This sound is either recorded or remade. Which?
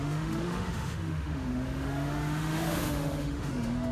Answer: remade